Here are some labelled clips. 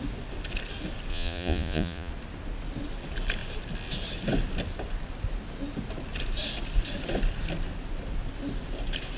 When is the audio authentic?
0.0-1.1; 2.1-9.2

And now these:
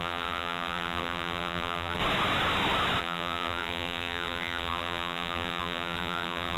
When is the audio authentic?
2.0-3.0